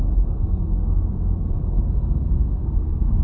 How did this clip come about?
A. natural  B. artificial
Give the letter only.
B